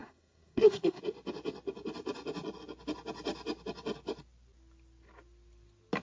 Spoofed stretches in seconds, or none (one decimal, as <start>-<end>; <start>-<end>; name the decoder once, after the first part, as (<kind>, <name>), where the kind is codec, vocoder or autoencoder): 0.0-1.0 (codec, SNAC)